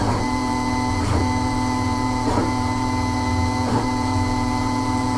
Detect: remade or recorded remade